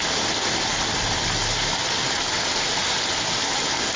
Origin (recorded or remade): recorded